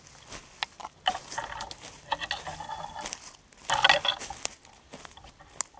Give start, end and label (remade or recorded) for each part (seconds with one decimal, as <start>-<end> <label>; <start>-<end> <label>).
0.0-5.8 recorded